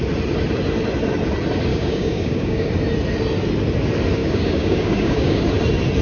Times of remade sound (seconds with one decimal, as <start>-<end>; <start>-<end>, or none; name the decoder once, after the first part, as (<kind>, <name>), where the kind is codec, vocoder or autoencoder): 1.7-2.7 (codec, DAC); 4.2-5.5